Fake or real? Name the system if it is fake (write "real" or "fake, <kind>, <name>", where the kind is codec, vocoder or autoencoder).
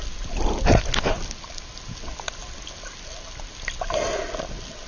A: real